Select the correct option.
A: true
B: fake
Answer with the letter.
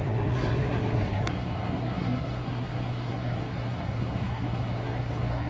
B